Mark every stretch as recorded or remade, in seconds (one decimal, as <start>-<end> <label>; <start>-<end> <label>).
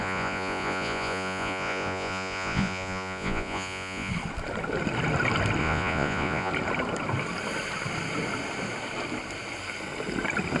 0.0-4.1 remade; 4.1-5.6 recorded; 5.6-6.5 remade; 6.5-10.6 recorded